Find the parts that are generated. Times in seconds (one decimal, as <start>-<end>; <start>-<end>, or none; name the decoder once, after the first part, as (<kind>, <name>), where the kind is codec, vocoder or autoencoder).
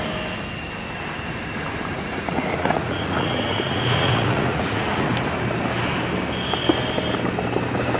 1.9-5.1 (vocoder, Vocos)